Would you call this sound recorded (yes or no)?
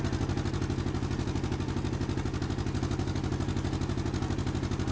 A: yes